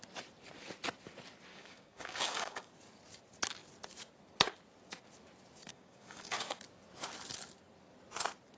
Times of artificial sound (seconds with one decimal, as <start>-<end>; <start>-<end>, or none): 1.5-2.7; 5.7-6.6